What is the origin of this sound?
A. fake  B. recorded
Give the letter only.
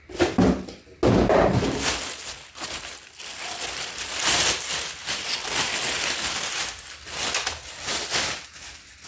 B